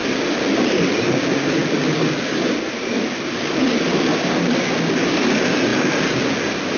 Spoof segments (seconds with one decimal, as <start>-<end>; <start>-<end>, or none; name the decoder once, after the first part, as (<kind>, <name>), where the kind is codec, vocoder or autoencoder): none